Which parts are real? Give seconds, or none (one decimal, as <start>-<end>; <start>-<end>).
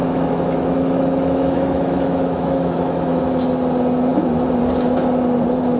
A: 3.2-5.8